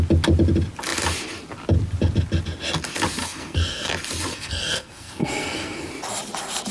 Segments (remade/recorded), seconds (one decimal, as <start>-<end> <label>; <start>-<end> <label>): 0.0-3.2 recorded; 3.2-3.9 remade; 3.9-4.3 recorded; 4.3-5.9 remade; 5.9-6.7 recorded